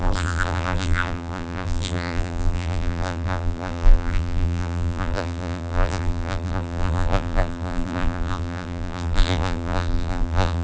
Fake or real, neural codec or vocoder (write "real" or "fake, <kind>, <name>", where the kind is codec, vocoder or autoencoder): fake, vocoder, BigVGAN v2